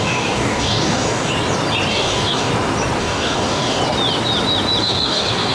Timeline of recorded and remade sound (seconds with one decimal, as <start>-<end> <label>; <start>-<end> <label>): 0.0-1.3 remade; 1.3-1.9 recorded; 1.9-2.5 remade; 2.5-3.0 recorded; 3.0-3.8 remade; 3.8-4.8 recorded; 4.8-5.5 remade